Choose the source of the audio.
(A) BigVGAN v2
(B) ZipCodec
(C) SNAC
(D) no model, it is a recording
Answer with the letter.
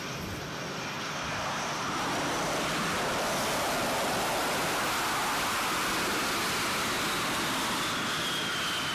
D